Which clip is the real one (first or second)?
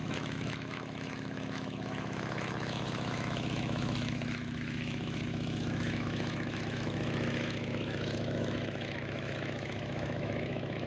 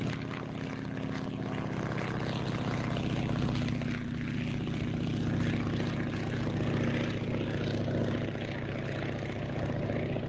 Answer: second